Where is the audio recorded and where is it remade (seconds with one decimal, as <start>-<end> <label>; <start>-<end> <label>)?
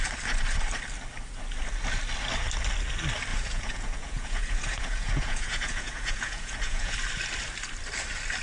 0.0-3.3 recorded; 3.3-6.9 remade; 6.9-8.4 recorded